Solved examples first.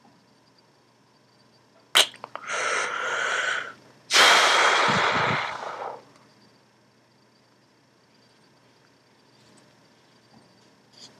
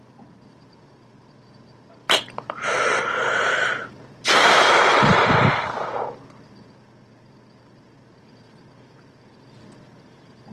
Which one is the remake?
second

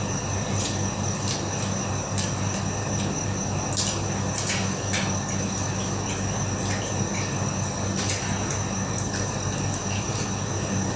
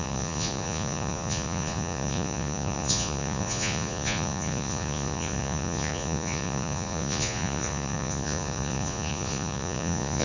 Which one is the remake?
second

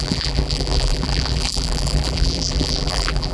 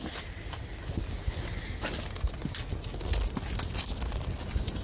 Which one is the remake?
first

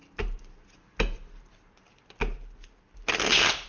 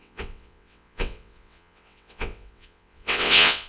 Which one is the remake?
second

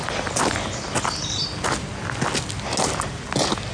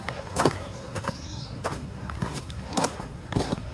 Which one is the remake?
second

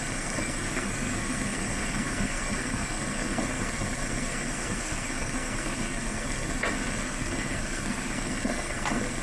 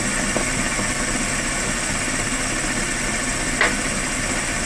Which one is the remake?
first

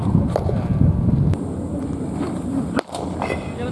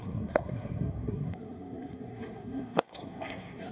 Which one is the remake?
second